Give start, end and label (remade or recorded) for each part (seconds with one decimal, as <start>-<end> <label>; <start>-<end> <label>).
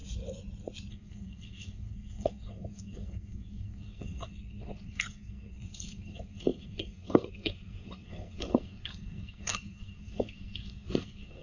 0.0-0.9 recorded; 0.9-11.4 remade